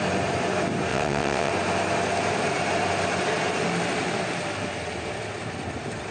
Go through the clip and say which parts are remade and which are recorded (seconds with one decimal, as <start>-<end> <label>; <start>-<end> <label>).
0.0-0.9 recorded; 0.9-1.5 remade; 1.5-6.1 recorded